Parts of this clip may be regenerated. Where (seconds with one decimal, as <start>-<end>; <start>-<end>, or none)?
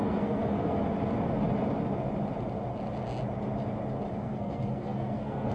0.0-0.8; 4.1-5.5